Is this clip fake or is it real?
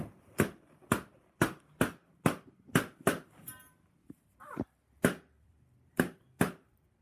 fake